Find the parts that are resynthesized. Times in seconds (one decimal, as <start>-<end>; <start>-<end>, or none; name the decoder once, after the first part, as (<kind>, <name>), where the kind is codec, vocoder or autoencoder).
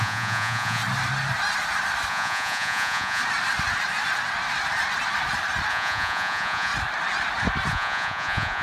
0.0-0.8 (vocoder, Vocos); 2.1-3.2; 5.7-6.7; 7.7-8.6